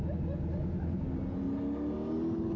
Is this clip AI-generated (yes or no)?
no